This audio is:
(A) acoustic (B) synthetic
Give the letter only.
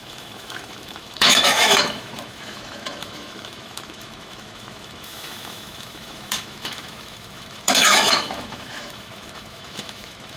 B